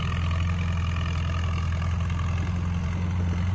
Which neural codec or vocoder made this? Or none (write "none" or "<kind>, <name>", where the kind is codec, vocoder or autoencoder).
none